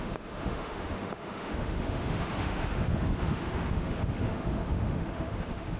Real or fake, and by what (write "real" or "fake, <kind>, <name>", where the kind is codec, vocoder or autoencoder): fake, autoencoder, DAC-VAE